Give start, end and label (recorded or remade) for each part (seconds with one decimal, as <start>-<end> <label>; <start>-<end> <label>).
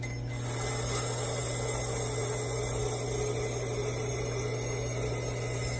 0.0-5.8 recorded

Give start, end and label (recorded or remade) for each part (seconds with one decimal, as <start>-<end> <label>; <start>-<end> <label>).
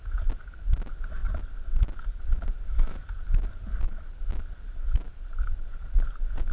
0.0-1.2 remade; 1.2-2.2 recorded; 2.2-6.5 remade